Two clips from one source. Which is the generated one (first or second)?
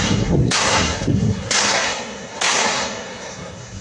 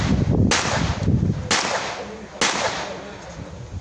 first